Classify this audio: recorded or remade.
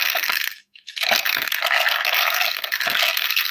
remade